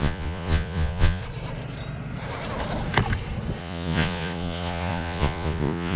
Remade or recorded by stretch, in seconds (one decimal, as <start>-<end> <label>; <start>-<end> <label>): 0.0-1.2 remade; 1.2-3.6 recorded; 3.6-6.0 remade